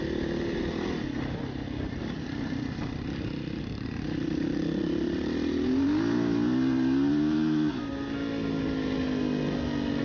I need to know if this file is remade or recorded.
recorded